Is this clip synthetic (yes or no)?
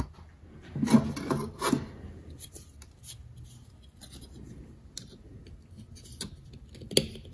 no